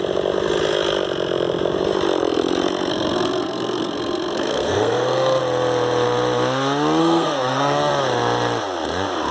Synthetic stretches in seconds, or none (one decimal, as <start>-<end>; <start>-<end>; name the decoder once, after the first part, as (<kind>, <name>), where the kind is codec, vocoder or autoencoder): 2.9-5.4 (codec, SNAC); 7.0-7.9